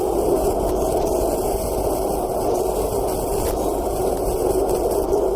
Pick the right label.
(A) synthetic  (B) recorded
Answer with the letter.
A